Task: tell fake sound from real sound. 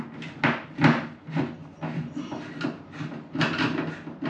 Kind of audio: real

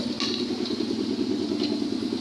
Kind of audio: real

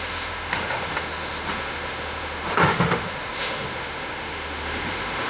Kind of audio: fake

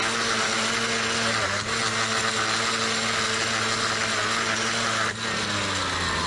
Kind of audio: real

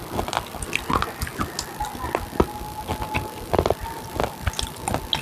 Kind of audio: real